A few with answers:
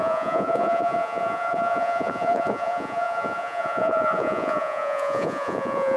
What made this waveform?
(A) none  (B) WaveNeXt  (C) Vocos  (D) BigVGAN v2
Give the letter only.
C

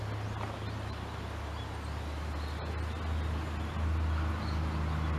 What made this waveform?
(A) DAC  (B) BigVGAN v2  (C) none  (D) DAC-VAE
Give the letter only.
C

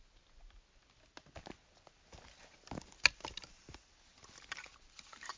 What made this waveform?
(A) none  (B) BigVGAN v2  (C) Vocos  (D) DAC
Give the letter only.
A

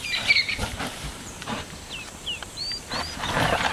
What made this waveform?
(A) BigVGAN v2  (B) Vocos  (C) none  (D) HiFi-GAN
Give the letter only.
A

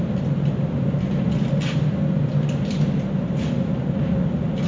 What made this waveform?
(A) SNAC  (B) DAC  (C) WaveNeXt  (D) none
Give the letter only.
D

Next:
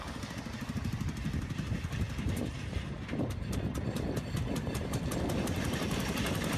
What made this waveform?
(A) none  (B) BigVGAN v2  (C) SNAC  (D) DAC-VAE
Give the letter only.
A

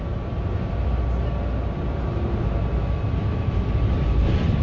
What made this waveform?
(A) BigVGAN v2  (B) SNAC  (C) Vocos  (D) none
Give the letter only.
D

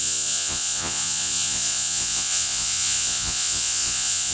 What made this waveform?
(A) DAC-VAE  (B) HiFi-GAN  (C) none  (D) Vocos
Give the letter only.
D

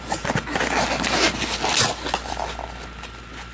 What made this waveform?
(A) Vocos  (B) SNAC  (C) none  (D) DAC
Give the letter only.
C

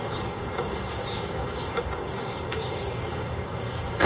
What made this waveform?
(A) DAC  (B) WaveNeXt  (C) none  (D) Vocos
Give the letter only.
A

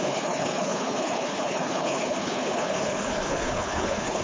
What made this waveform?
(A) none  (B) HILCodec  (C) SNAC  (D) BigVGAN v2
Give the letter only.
B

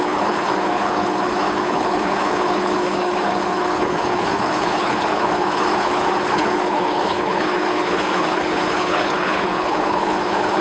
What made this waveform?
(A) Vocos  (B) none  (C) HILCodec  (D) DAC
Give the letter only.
C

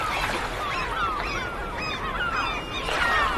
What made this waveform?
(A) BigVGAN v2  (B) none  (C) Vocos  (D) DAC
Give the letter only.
B